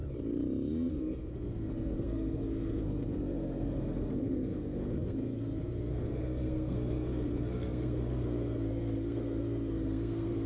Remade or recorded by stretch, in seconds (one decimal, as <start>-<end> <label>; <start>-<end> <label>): 0.0-0.9 recorded; 0.9-10.5 remade